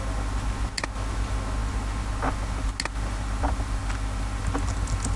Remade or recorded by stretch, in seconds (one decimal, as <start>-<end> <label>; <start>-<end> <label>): 0.0-5.2 recorded